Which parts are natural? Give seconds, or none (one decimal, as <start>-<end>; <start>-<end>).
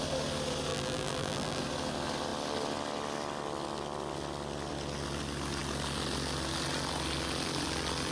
0.0-0.7; 1.6-8.1